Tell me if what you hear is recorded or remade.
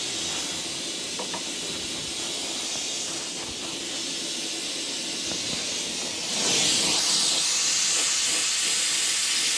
recorded